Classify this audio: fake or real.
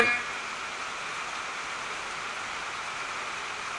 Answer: real